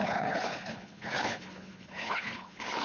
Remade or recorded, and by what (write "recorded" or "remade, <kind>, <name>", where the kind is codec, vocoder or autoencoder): remade, codec, HILCodec